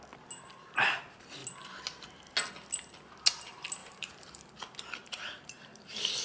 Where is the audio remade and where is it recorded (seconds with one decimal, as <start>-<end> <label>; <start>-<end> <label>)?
0.0-3.8 recorded; 3.8-4.5 remade; 4.5-5.0 recorded; 5.0-5.7 remade; 5.7-6.2 recorded